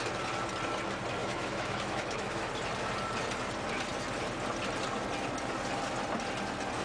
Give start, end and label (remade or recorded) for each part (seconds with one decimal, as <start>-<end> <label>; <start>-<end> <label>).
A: 0.0-1.2 recorded; 1.2-2.5 remade; 2.5-6.8 recorded